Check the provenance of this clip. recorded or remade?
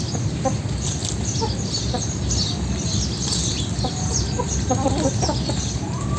recorded